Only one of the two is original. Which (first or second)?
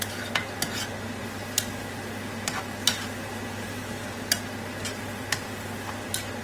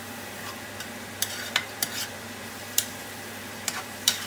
first